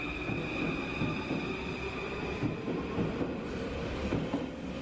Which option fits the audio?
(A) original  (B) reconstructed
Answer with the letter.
A